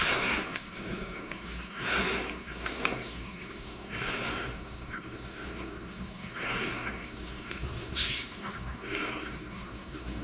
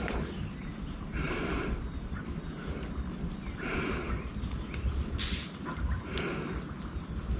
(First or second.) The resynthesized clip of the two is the first